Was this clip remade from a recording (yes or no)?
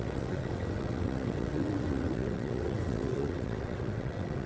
yes